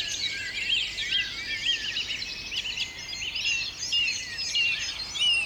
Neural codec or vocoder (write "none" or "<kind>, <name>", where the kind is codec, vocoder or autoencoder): none